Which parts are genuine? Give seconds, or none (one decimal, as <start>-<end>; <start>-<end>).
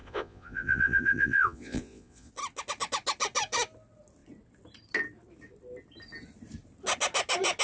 2.3-7.6